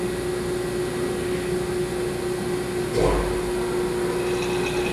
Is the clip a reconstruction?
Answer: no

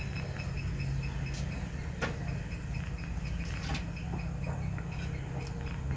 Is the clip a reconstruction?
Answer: no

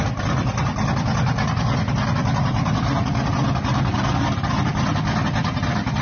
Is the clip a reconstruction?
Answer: no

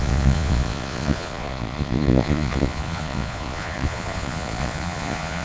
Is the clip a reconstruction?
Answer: yes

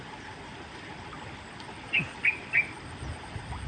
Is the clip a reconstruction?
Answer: no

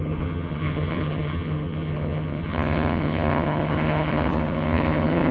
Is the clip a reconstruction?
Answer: yes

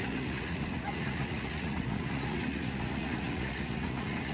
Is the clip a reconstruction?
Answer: yes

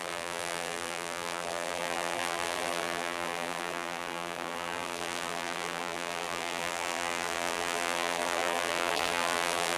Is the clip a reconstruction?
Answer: yes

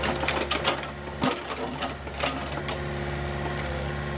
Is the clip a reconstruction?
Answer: no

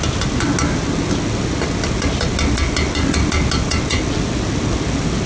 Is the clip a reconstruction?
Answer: no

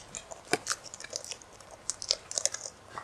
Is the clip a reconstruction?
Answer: yes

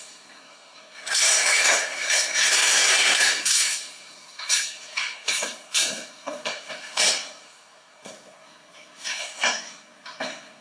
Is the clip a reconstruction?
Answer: yes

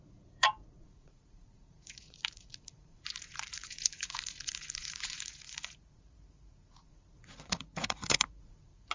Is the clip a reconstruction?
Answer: yes